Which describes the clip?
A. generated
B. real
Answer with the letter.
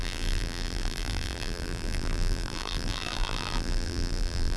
A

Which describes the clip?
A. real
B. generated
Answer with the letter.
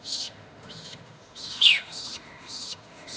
B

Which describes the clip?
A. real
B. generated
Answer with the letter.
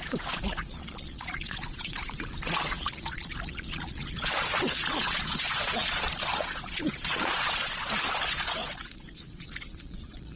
B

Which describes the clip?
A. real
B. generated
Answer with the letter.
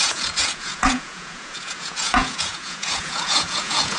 B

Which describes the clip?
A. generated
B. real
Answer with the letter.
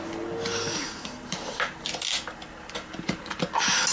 B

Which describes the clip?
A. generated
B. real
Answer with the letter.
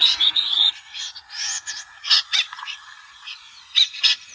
A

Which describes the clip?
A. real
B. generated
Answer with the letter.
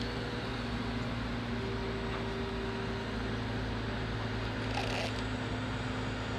A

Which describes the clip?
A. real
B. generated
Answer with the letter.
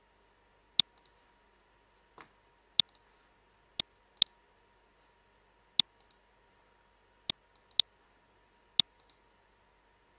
A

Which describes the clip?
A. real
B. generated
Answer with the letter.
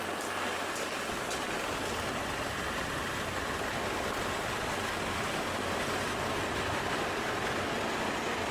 A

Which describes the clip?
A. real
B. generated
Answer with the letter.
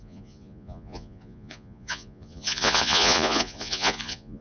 B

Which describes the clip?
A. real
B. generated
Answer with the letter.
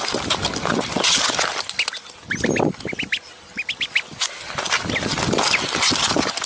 A